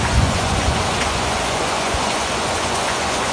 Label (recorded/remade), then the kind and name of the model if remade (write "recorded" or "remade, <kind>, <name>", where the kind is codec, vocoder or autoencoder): remade, vocoder, Vocos